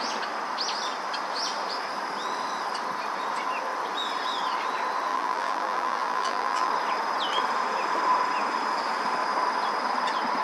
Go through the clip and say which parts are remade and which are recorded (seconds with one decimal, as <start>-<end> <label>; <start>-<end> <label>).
0.0-5.1 recorded; 5.1-6.7 remade; 6.7-10.4 recorded